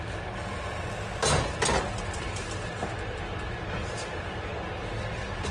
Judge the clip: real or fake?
real